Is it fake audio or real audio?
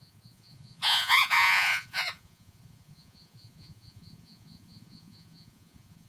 fake